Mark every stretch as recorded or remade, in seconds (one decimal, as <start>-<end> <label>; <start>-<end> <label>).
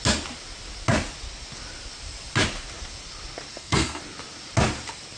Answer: 0.0-3.5 recorded; 3.5-4.0 remade; 4.0-5.2 recorded